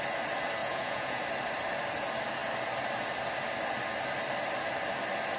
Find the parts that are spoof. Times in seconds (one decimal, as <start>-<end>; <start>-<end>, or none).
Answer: 0.6-1.2